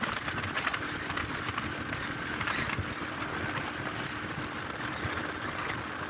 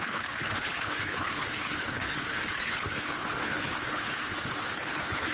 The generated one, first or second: second